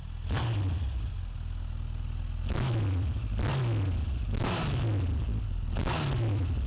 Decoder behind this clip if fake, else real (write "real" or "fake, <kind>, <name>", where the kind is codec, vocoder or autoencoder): real